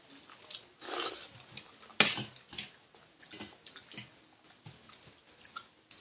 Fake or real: real